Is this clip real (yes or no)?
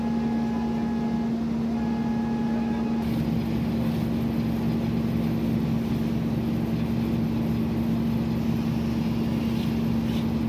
yes